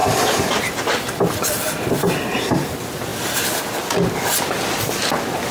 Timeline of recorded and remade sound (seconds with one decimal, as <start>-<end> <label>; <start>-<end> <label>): 0.0-1.6 remade; 1.6-3.1 recorded; 3.1-3.7 remade; 3.7-5.5 recorded